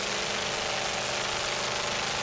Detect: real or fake real